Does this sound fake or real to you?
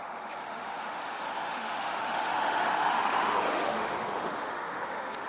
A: fake